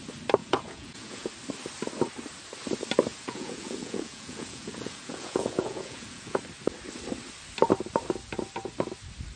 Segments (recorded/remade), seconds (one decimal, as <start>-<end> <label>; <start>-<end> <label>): 0.0-0.4 recorded; 0.4-1.3 remade; 1.3-3.1 recorded; 3.1-6.4 remade; 6.4-9.4 recorded